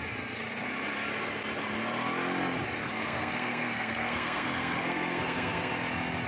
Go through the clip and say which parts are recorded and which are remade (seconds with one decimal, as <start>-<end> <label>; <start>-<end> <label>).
0.0-3.0 recorded; 3.0-5.7 remade; 5.7-6.3 recorded